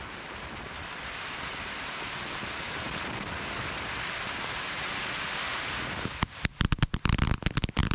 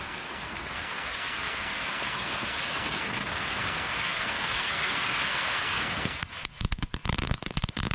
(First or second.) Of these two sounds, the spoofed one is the second